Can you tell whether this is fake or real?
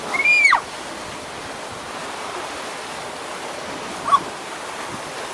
real